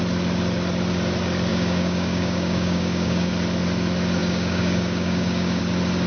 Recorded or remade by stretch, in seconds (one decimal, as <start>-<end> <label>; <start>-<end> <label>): 0.0-1.5 recorded; 1.5-3.3 remade; 3.3-4.2 recorded; 4.2-5.6 remade; 5.6-6.1 recorded